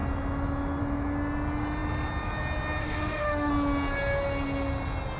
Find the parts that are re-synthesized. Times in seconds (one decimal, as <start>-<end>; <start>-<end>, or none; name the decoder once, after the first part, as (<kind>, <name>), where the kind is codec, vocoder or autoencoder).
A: 2.8-3.5 (autoencoder, DAC-VAE)